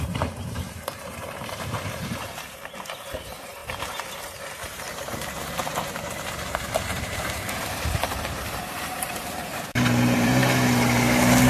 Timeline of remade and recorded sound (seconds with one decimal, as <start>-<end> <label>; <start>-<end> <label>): 0.0-10.4 remade; 10.4-11.5 recorded